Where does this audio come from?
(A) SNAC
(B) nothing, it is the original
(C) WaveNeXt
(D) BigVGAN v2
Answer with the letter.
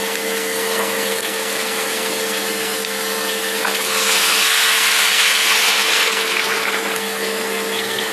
A